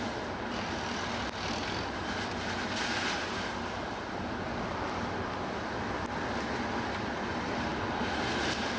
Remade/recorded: recorded